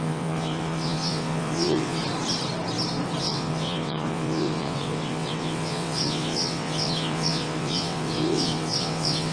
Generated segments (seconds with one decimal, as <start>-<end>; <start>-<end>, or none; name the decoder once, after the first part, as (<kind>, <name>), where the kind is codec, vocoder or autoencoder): 0.0-2.0 (vocoder, WaveNeXt); 3.2-9.3